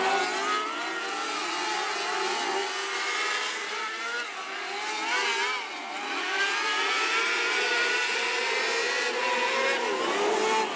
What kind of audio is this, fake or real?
real